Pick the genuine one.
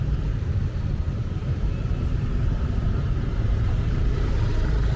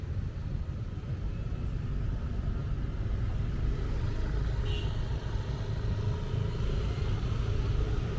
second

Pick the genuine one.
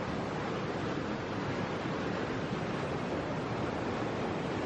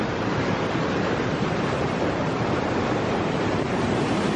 first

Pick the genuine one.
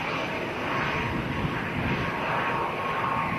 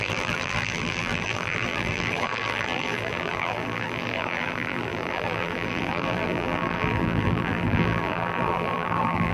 first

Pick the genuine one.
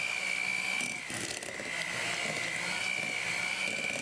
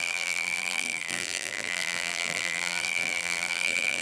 first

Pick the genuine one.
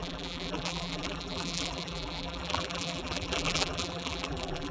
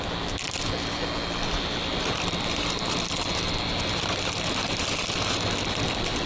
second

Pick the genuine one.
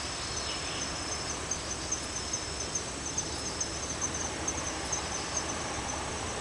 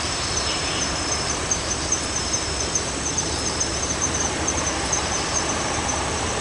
first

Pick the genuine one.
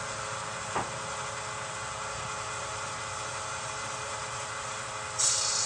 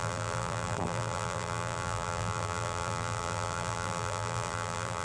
first